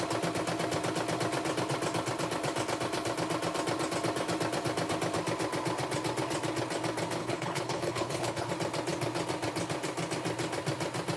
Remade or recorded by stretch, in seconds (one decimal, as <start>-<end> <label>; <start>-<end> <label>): 0.0-7.2 recorded; 7.2-8.5 remade; 8.5-11.2 recorded